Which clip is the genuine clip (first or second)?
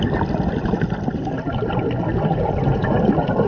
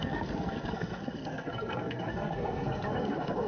first